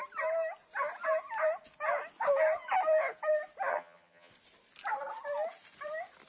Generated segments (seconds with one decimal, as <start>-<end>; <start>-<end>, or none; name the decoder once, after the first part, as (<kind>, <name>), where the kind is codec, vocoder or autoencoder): 3.7-4.3 (vocoder, HiFi-GAN)